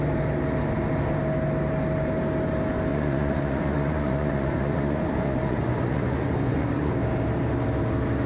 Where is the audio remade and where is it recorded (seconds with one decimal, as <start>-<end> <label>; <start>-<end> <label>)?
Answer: 0.0-2.9 recorded; 2.9-6.9 remade; 6.9-8.3 recorded